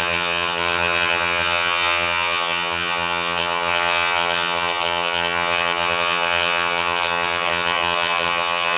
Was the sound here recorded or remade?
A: remade